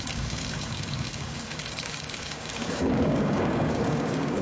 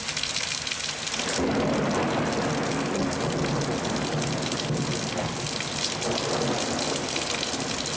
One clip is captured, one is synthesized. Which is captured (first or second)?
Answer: second